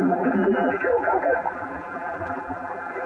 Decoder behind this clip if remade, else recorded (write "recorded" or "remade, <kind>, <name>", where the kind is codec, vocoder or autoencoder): remade, vocoder, BigVGAN v2